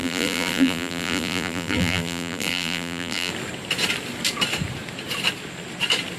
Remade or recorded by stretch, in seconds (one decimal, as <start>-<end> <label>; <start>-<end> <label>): 0.0-3.3 remade; 3.3-6.2 recorded